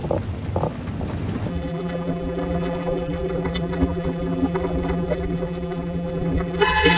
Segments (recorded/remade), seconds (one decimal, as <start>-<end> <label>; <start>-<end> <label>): 0.0-1.5 recorded; 1.5-7.0 remade